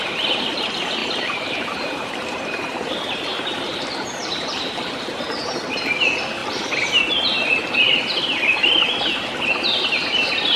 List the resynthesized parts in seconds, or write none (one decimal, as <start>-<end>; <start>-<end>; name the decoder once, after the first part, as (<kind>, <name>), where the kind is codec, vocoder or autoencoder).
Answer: 1.0-5.9 (vocoder, BigVGAN v2)